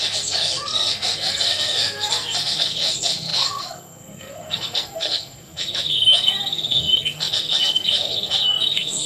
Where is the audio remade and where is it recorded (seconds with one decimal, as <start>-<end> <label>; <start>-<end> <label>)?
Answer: 0.0-9.1 remade